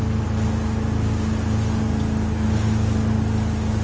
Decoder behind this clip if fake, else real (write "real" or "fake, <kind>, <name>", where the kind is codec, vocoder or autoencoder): real